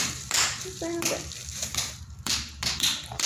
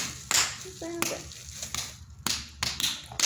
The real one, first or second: second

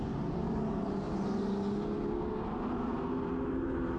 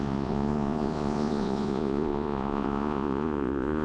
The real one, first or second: first